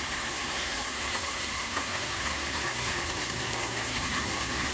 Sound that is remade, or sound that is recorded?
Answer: remade